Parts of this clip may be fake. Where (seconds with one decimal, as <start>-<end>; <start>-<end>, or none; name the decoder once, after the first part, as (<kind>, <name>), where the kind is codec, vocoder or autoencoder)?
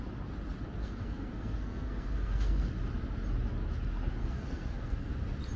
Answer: 0.8-2.7 (codec, SNAC); 4.2-5.1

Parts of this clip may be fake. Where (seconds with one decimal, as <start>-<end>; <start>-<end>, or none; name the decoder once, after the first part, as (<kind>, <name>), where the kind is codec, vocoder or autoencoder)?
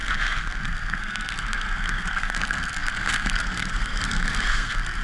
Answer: 0.0-5.0 (codec, SNAC)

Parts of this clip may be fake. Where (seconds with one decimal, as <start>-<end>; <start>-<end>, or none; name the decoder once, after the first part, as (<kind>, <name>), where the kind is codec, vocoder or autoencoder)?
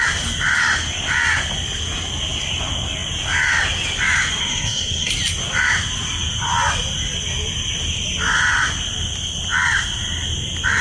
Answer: 4.4-5.1 (codec, SNAC)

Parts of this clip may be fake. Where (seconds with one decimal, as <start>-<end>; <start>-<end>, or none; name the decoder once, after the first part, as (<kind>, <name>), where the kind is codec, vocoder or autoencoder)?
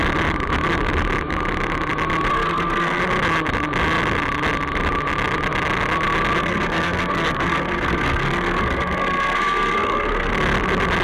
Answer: 2.3-3.0 (codec, SNAC); 6.4-10.3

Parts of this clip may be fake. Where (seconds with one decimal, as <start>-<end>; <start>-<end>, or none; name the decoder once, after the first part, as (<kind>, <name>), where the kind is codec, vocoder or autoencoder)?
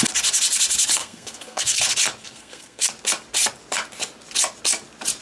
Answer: 1.0-1.8 (codec, SNAC); 2.2-2.9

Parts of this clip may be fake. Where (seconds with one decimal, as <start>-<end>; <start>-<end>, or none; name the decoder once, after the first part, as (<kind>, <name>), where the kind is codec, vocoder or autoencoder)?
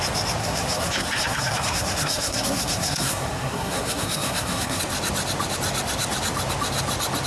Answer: 0.4-4.8 (codec, SNAC)